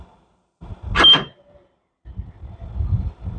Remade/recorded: recorded